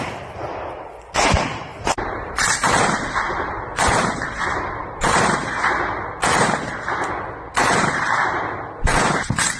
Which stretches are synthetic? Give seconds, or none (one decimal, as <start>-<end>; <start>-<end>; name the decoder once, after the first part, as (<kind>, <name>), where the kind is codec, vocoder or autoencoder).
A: 1.7-3.1 (vocoder, BigVGAN v2); 4.8-5.5; 7.6-8.2

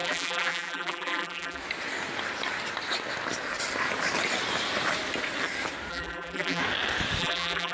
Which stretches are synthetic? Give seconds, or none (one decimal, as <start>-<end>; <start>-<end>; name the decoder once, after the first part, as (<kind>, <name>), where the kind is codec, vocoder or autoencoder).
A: 0.0-1.6 (vocoder, BigVGAN v2); 5.9-6.6; 7.2-7.7

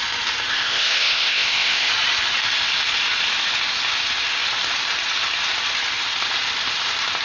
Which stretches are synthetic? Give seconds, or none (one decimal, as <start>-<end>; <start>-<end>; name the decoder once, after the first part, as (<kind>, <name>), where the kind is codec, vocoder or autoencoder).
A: 0.5-1.9 (codec, ZipCodec)

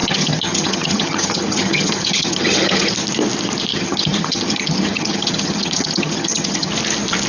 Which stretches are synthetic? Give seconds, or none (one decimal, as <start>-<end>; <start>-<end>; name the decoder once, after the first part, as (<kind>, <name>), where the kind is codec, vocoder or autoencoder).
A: 0.0-2.9 (vocoder, HiFi-GAN); 3.7-6.7

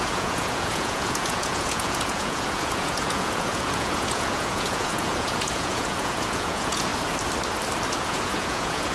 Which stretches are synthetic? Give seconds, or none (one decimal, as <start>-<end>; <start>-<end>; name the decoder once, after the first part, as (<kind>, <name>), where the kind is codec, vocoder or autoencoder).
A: 0.0-6.9 (vocoder, Vocos); 7.9-8.9

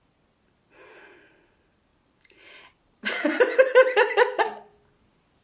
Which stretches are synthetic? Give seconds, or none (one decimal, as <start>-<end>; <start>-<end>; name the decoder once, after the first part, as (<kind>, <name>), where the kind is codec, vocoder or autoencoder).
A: 1.9-4.4 (vocoder, BigVGAN v2)